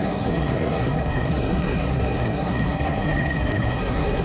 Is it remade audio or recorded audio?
remade